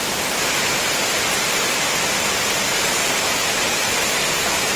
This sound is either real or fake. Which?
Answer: real